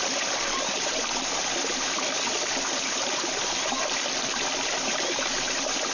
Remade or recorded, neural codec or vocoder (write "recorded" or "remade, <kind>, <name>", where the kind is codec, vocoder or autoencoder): recorded